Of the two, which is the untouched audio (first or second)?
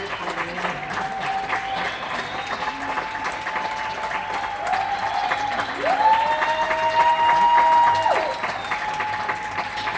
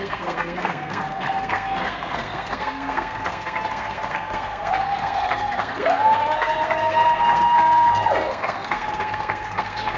first